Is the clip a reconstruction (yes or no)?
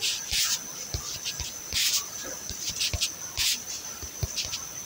no